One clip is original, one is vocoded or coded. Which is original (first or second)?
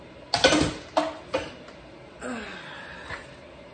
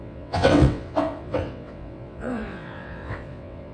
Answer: first